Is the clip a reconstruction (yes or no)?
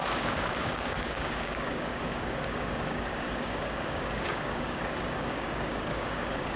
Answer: yes